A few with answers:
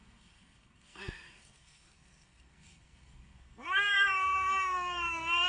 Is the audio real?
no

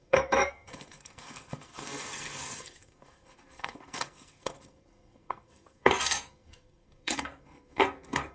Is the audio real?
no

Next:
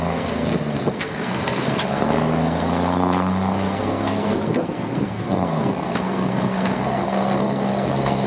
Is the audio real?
no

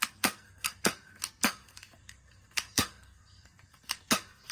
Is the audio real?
no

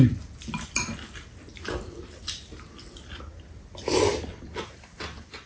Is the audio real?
yes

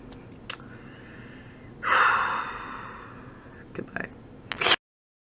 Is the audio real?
yes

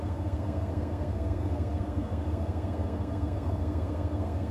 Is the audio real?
no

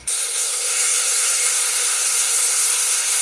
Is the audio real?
no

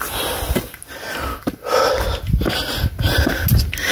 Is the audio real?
yes